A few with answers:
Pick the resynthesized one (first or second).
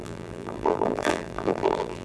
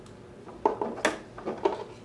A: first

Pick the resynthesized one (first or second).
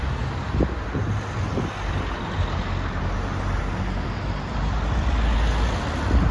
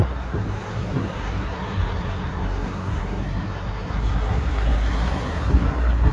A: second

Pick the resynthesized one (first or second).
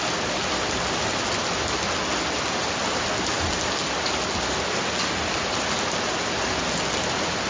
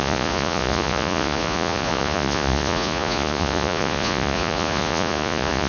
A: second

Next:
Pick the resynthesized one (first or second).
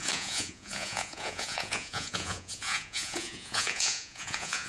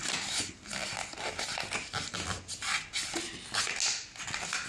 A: first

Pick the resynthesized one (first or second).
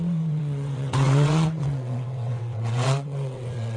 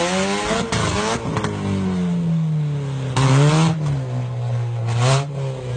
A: first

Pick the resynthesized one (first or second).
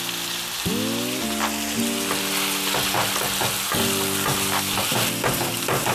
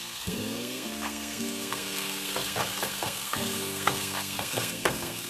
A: second